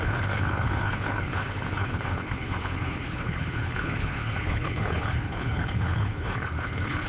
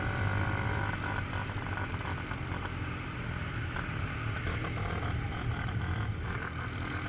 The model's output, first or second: first